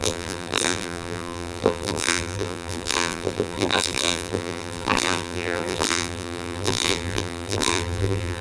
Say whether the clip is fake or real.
fake